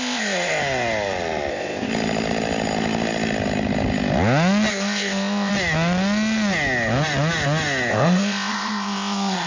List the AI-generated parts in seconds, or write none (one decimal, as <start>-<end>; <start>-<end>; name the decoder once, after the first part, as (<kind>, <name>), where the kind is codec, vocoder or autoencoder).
0.0-0.6 (codec, ZipCodec); 1.5-1.9; 4.7-5.5; 7.9-9.5